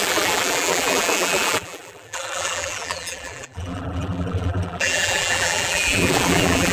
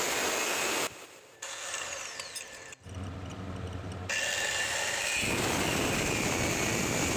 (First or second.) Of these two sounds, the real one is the second